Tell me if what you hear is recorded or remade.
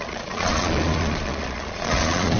remade